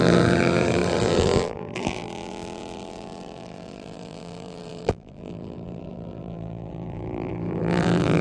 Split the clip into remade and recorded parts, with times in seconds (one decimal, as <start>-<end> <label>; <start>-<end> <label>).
0.0-8.2 remade